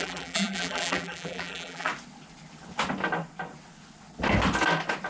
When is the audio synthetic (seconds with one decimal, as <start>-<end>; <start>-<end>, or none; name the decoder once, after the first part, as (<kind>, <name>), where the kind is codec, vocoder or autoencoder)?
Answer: 0.0-1.9 (vocoder, BigVGAN v2)